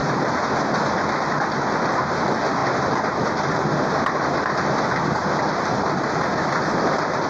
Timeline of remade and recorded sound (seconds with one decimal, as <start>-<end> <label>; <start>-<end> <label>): 0.0-7.3 recorded